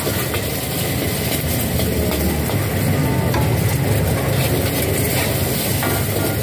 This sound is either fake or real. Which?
real